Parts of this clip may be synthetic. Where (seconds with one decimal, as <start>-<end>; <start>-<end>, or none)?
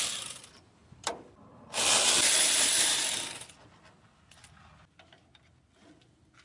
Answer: 0.8-3.5